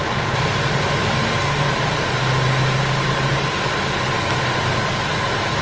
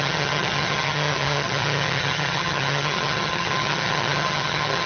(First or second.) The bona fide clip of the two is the first